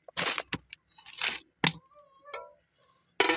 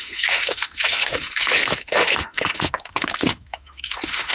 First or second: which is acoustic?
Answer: first